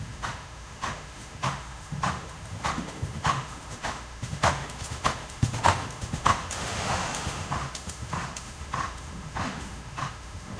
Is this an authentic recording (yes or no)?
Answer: no